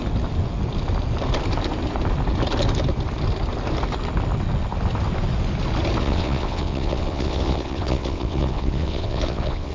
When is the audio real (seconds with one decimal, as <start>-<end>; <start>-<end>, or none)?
0.0-6.0